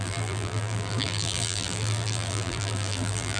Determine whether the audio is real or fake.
fake